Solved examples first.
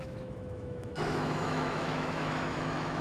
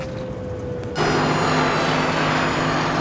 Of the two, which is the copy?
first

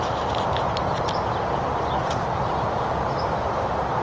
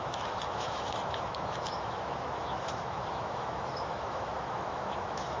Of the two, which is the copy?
second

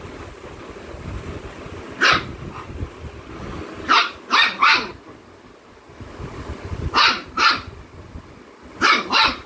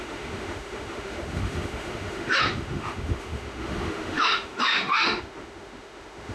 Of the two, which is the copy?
second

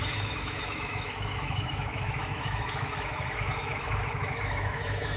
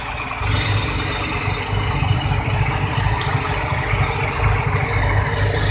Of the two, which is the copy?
first